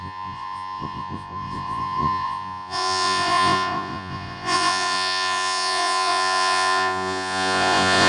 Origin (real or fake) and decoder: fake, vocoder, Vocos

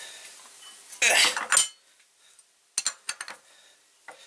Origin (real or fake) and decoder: real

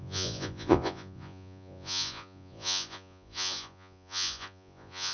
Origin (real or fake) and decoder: fake, vocoder, Vocos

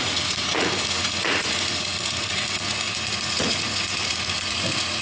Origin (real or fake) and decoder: fake, vocoder, Vocos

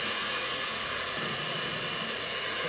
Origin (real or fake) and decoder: fake, vocoder, Vocos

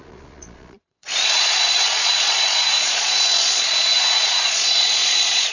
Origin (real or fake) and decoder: fake, vocoder, Vocos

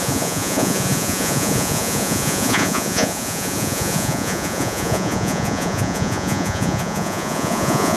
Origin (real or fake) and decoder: fake, vocoder, Vocos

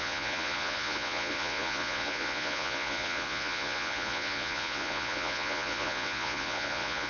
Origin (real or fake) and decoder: fake, vocoder, Vocos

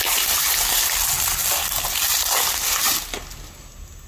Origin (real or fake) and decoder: real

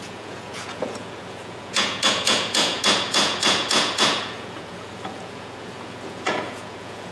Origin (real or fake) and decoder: fake, vocoder, Vocos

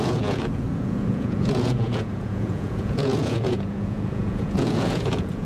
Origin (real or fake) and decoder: fake, vocoder, Vocos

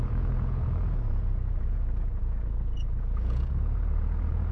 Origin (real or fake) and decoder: fake, vocoder, Vocos